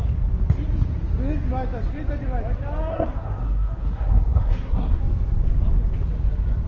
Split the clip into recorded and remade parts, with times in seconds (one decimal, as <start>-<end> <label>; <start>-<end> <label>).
0.0-2.9 recorded; 2.9-5.0 remade; 5.0-6.7 recorded